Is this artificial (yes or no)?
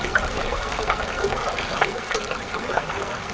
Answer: yes